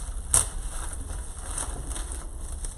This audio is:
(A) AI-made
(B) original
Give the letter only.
B